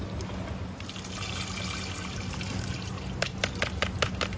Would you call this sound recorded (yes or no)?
yes